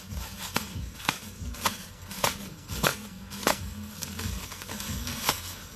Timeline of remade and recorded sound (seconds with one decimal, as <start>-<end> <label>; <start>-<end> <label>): 0.0-5.8 remade